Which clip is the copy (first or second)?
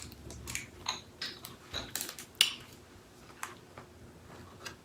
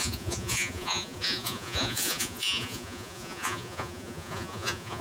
second